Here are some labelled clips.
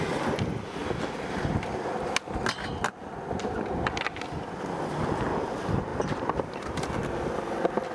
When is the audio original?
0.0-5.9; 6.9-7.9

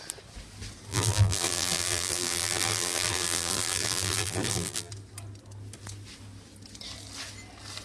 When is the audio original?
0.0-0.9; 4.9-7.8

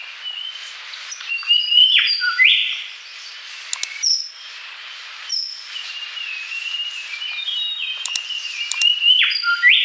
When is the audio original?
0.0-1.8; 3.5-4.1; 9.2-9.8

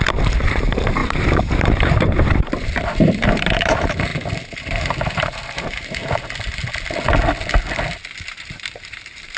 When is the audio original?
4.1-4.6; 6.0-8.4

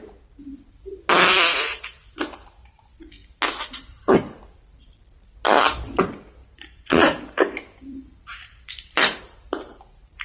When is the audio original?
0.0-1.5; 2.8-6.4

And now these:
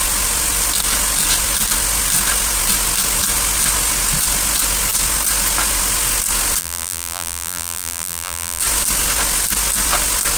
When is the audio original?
0.0-6.6; 8.6-10.4